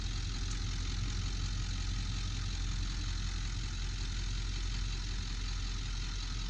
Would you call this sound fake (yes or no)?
no